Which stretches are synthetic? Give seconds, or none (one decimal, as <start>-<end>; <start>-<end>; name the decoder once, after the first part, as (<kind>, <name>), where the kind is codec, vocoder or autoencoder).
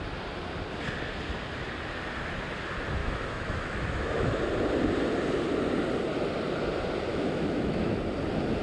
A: 3.0-4.4 (autoencoder, DAC-VAE); 7.1-7.9